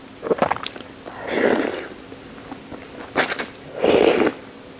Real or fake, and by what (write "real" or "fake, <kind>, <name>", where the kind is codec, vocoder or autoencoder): real